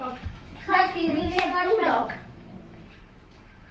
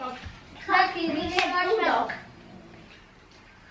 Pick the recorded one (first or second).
second